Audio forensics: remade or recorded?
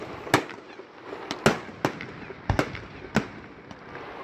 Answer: recorded